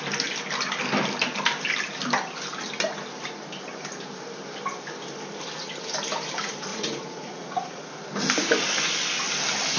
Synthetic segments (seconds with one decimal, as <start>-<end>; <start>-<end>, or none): 6.7-8.0